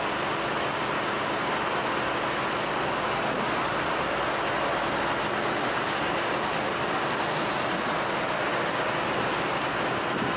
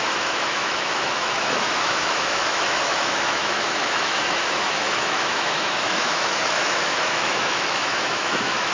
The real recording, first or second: first